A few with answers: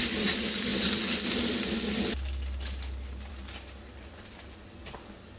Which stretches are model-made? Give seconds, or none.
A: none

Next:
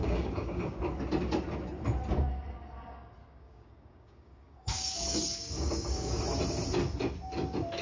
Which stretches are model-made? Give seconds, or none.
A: 0.0-0.8 (codec, DAC); 3.2-6.2

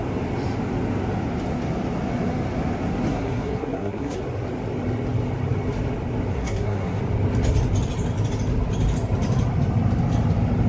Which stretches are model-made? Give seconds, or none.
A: 3.1-4.2 (codec, SNAC); 6.3-7.0

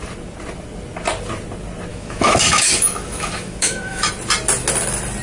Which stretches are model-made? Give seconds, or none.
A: 1.9-4.1 (autoencoder, DAC-VAE)

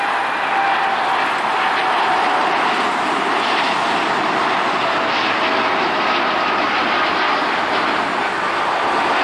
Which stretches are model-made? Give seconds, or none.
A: none

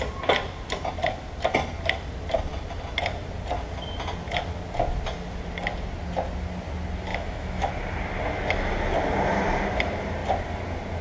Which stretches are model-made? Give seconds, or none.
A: 7.1-7.7 (autoencoder, DAC-VAE)

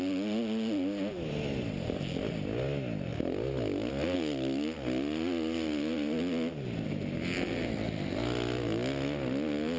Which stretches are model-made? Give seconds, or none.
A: none